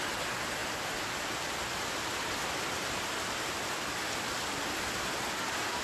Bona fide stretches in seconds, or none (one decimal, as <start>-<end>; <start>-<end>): 0.0-0.6; 3.3-5.8